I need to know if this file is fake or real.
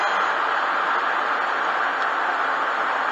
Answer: real